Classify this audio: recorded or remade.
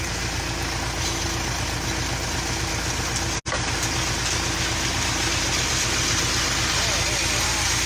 recorded